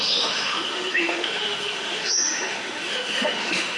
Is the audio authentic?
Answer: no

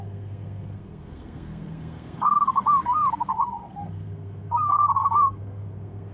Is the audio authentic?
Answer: no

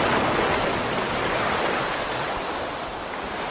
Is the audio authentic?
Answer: yes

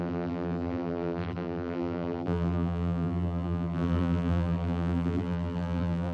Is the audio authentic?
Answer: no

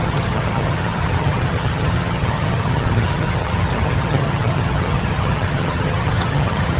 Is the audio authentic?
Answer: no